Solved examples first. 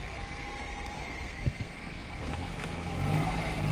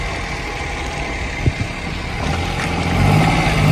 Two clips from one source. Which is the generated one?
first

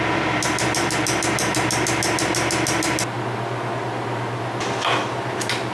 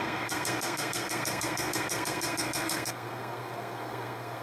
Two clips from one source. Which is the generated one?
second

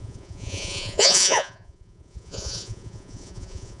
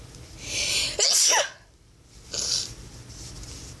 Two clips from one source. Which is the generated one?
first